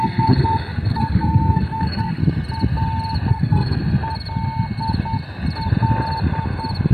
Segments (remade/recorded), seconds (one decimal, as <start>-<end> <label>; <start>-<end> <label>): 0.0-2.2 remade; 2.2-3.3 recorded; 3.3-3.8 remade; 3.8-6.9 recorded